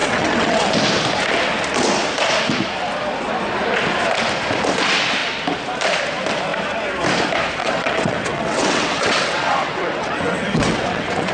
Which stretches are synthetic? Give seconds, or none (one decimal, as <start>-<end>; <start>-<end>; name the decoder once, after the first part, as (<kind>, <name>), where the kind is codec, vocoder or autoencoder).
0.0-0.7 (vocoder, WaveNeXt); 7.6-11.3